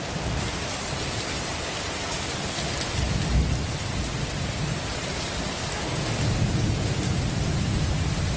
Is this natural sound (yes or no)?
yes